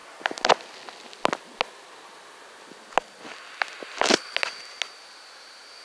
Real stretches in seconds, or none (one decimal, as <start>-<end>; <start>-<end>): 0.0-5.8